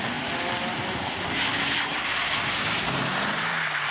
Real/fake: real